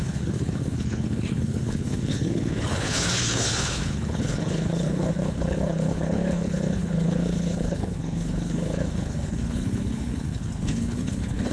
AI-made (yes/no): yes